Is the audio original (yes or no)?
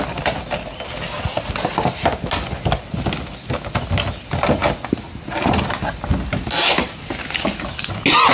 yes